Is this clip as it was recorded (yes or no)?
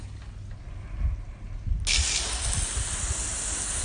yes